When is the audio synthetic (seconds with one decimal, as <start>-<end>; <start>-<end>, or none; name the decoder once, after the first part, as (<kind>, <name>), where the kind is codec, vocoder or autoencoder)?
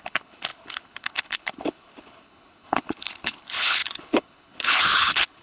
0.0-5.4 (codec, HILCodec)